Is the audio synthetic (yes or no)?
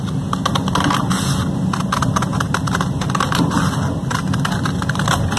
no